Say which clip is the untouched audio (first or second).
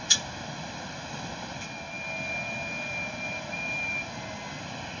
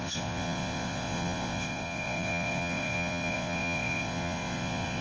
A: first